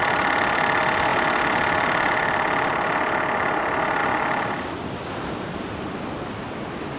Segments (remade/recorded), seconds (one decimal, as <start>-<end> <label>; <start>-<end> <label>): 0.0-7.0 recorded